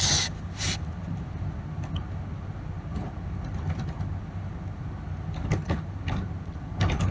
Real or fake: real